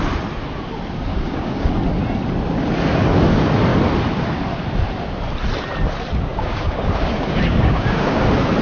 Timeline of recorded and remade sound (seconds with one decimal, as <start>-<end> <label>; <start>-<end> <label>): 0.0-1.1 recorded; 1.1-1.7 remade; 1.7-6.3 recorded; 6.3-8.2 remade; 8.2-8.6 recorded